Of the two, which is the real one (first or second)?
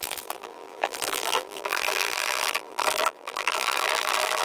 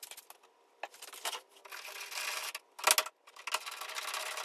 second